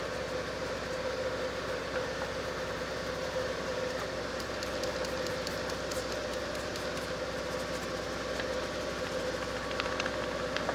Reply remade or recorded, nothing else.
recorded